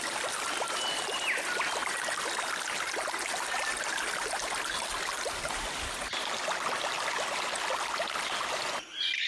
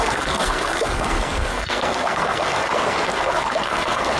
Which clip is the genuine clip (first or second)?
first